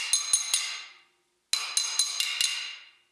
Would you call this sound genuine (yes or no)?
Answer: yes